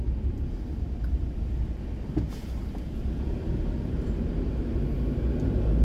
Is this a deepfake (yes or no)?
no